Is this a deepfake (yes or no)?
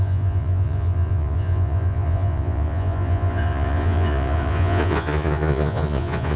yes